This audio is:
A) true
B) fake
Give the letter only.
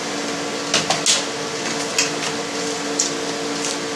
A